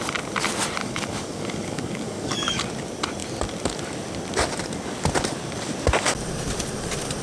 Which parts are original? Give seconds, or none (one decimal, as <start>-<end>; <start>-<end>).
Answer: 0.0-0.8; 2.6-7.2